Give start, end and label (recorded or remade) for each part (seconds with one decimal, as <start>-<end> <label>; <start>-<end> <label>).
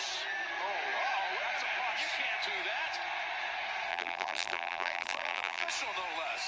0.0-3.9 recorded; 3.9-5.7 remade; 5.7-6.5 recorded